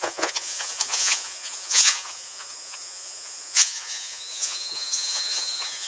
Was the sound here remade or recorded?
remade